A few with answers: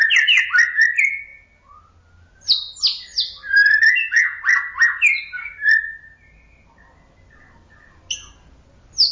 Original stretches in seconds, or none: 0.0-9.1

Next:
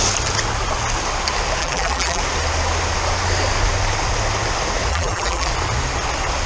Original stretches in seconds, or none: 0.0-1.6; 2.2-4.9; 5.5-6.5

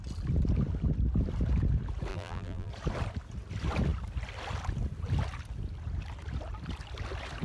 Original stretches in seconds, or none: 0.0-2.1; 2.7-7.4

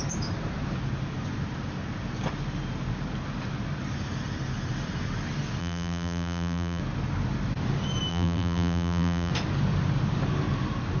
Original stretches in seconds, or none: 0.0-5.6; 6.8-8.1; 9.3-11.0

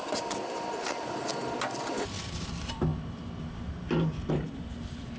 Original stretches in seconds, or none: 1.3-2.3; 2.9-4.3

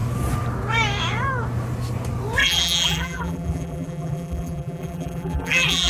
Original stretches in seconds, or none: 0.0-2.4

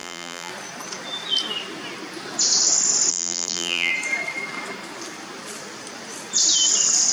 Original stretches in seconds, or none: 0.5-3.1; 3.9-7.1

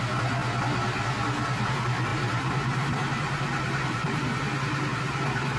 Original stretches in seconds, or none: 0.0-2.1; 4.4-5.6